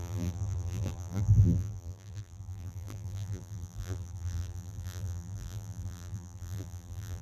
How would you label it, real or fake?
fake